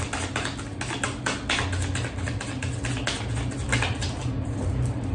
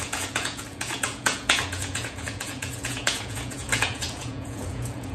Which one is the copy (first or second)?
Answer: second